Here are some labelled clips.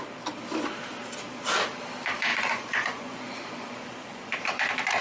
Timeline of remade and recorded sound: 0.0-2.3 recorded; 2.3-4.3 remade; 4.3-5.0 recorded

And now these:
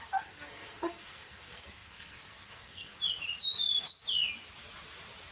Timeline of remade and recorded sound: 0.0-2.9 remade; 2.9-5.3 recorded

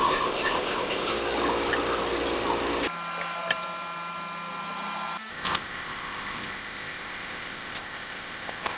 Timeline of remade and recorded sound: 0.0-1.1 remade; 1.1-5.3 recorded; 5.3-8.8 remade

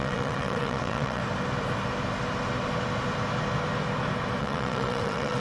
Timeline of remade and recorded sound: 0.0-1.2 remade; 1.2-4.4 recorded; 4.4-5.4 remade

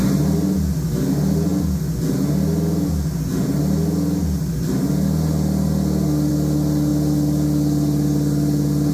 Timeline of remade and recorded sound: 0.0-8.9 recorded

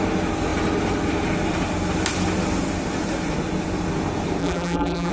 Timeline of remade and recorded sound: 0.0-4.4 recorded; 4.4-5.1 remade

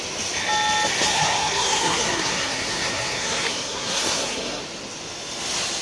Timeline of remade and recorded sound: 0.0-1.1 recorded; 1.1-4.6 remade; 4.6-5.8 recorded

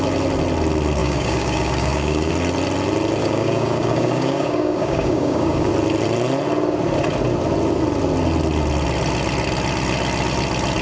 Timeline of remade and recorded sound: 0.0-1.0 recorded; 1.0-2.3 remade; 2.3-3.2 recorded; 3.2-5.7 remade; 5.7-10.8 recorded